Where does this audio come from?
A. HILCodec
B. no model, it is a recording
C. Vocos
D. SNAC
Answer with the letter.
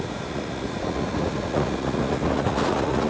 C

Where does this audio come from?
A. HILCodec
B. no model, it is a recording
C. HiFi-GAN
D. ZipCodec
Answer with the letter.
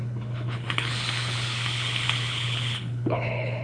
A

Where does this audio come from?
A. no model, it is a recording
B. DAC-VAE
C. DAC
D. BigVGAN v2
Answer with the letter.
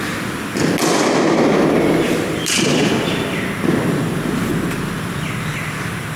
A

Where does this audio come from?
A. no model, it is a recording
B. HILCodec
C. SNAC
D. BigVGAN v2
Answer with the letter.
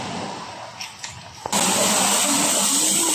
A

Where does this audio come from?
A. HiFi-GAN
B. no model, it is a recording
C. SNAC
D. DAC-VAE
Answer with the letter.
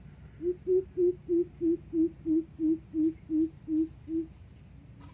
B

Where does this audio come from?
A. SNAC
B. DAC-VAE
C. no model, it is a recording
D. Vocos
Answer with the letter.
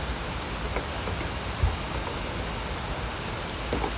C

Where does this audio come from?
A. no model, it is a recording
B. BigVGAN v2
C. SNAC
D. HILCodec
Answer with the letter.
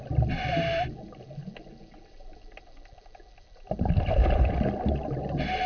A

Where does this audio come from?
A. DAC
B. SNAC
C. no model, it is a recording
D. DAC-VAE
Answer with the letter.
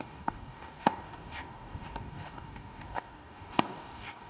A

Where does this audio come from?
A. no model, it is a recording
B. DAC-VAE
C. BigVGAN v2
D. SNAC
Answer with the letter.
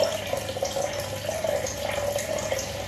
A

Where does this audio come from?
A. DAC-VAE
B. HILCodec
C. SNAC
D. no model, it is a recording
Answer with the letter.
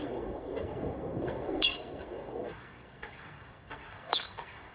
C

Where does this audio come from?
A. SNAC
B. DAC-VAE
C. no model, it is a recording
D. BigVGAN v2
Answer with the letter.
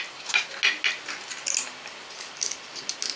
C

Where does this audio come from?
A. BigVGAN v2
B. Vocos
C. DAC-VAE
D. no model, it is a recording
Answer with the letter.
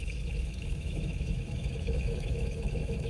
C